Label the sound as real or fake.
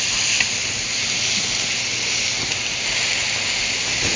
real